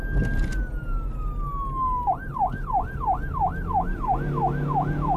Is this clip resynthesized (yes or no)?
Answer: no